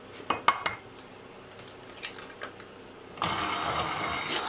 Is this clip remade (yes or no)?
no